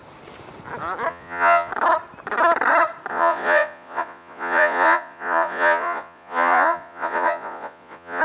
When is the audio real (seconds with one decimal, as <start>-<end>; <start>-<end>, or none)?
0.0-1.1; 1.7-3.1